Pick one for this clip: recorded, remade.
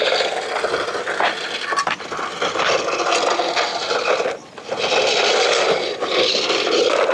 recorded